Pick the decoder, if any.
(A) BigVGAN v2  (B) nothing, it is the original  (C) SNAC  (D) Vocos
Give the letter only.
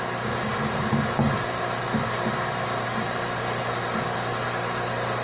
B